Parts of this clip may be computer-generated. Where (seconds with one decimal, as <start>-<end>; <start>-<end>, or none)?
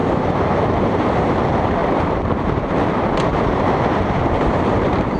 0.0-1.4; 1.8-5.2